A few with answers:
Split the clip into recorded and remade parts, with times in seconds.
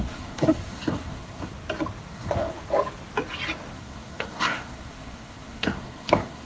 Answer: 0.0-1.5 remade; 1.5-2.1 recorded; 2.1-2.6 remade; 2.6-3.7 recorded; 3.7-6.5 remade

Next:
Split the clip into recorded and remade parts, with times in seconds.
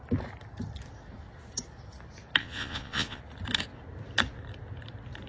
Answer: 0.0-2.4 recorded; 2.4-3.2 remade; 3.2-5.3 recorded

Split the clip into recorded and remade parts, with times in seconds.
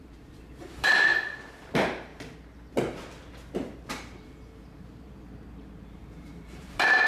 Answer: 0.0-2.1 remade; 2.1-3.9 recorded; 3.9-7.1 remade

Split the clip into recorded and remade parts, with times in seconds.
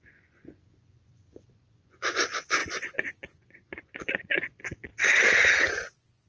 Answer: 0.0-4.9 remade; 4.9-5.7 recorded; 5.7-6.3 remade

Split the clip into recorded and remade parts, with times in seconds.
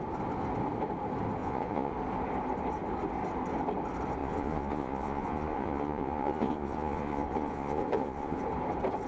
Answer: 0.0-1.4 recorded; 1.4-1.9 remade; 1.9-4.2 recorded; 4.2-8.4 remade; 8.4-9.1 recorded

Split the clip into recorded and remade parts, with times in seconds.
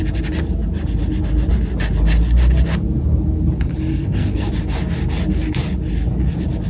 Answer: 0.0-3.9 recorded; 3.9-4.5 remade; 4.5-6.7 recorded